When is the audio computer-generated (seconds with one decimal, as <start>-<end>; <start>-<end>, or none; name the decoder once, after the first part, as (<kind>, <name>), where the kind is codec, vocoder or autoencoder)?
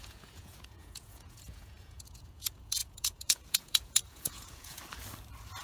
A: 0.0-4.8 (vocoder, Vocos)